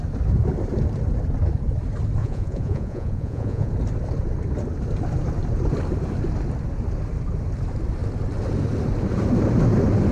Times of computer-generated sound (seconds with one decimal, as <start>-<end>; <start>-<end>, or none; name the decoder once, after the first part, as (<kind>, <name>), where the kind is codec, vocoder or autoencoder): 2.2-3.7 (vocoder, Vocos)

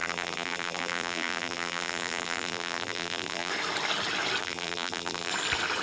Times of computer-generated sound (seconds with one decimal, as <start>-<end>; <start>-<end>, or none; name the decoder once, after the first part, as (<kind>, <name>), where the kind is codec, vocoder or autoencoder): 0.0-3.5 (vocoder, BigVGAN v2); 4.4-5.3

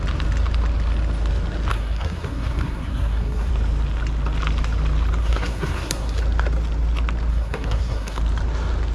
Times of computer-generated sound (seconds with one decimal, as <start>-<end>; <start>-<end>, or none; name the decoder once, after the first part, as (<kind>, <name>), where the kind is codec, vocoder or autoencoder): 1.7-3.5 (codec, SNAC); 5.2-6.2; 7.3-8.2

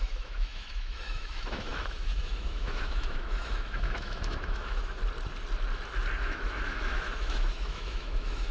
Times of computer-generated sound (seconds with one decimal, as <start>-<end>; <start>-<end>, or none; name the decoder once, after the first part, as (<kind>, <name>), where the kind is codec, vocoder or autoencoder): 0.0-5.0 (autoencoder, DAC-VAE); 6.2-8.5

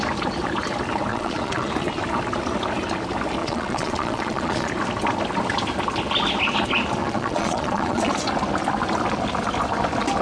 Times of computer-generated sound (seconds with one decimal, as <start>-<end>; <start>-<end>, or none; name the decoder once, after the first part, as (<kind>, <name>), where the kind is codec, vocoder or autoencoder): 1.1-1.7 (vocoder, Vocos); 3.4-4.7; 7.0-8.1

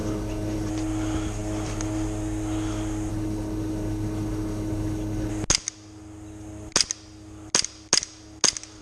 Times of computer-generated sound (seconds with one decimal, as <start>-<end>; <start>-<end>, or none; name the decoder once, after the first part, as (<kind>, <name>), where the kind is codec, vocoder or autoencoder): 0.0-0.7 (codec, HILCodec); 3.1-5.3

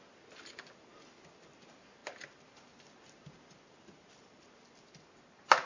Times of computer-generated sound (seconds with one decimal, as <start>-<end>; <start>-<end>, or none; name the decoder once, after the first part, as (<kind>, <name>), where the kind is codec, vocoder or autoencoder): none